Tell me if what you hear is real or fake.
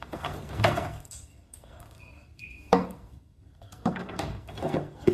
fake